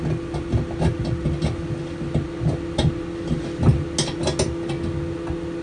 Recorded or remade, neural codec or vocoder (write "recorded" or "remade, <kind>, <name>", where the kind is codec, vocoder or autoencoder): recorded